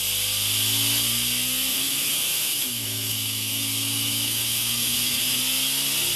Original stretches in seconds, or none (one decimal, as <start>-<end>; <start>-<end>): 0.0-1.7; 5.4-6.2

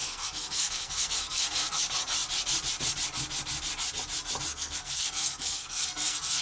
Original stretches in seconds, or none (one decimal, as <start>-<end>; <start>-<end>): 1.8-4.5

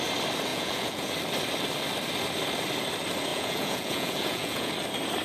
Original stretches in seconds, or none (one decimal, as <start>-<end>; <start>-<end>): 0.0-0.5; 1.1-3.3; 4.7-5.2

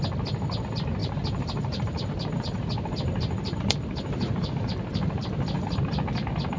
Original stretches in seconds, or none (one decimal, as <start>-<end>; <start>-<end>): 0.0-1.0; 4.4-4.9; 5.8-6.6

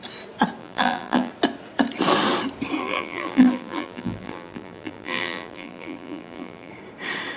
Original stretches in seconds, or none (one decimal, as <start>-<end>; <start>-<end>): 0.0-0.6; 1.3-2.8; 6.7-7.4

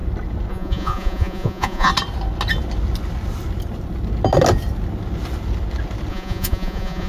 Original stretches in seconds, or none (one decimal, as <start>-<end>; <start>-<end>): 0.0-0.5; 1.9-6.1